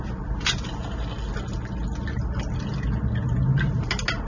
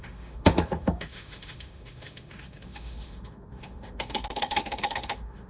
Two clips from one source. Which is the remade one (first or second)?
second